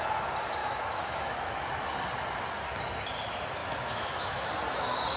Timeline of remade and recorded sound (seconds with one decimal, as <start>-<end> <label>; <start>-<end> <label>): 0.0-0.6 recorded; 0.6-1.7 remade; 1.7-3.6 recorded; 3.6-4.5 remade; 4.5-5.2 recorded